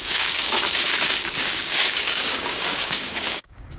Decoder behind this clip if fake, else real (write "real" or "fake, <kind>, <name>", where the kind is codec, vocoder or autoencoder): fake, codec, DAC